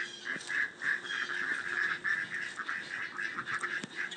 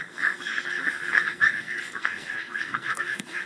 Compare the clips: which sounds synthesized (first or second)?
second